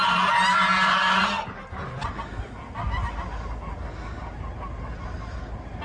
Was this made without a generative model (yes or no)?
yes